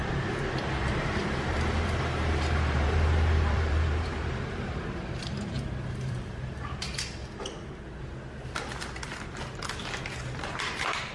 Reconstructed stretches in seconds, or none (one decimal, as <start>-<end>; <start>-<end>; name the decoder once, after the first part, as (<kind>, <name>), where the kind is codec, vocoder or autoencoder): 0.0-7.2 (vocoder, BigVGAN v2); 10.4-11.1